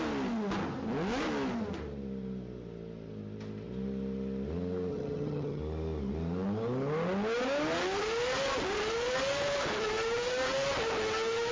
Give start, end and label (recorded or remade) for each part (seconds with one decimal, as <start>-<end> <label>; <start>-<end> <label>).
0.0-4.9 recorded; 4.9-5.6 remade; 5.6-11.5 recorded

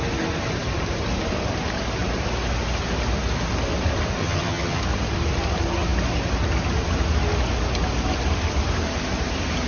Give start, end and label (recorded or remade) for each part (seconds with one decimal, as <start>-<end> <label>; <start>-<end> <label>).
0.0-4.2 recorded; 4.2-4.8 remade; 4.8-9.7 recorded

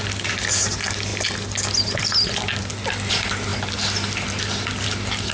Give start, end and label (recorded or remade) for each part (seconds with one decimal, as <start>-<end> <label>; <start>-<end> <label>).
0.0-5.3 recorded

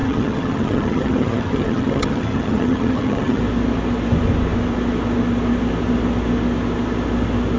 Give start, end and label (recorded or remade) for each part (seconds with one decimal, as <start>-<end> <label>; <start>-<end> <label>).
0.0-3.4 remade; 3.4-7.6 recorded

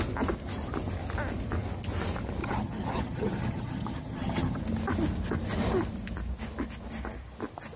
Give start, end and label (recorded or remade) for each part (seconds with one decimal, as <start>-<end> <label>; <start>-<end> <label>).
0.0-2.4 recorded; 2.4-4.6 remade; 4.6-7.8 recorded